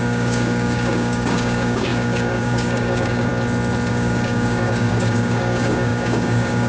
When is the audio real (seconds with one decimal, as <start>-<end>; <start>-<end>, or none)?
3.3-3.9